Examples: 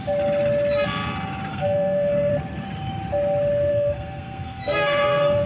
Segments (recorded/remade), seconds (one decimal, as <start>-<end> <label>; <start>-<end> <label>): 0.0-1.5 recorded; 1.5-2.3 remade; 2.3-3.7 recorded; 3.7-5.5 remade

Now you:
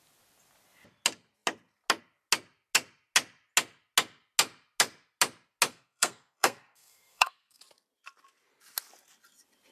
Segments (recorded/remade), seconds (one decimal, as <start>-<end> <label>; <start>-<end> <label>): 0.0-5.7 recorded; 5.7-7.6 remade; 7.6-9.7 recorded

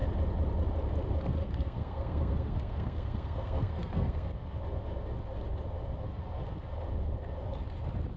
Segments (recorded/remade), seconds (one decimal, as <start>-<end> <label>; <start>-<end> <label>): 0.0-1.4 recorded; 1.4-4.3 remade; 4.3-8.2 recorded

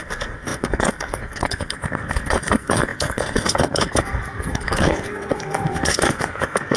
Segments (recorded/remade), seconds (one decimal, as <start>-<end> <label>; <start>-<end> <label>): 0.0-6.8 remade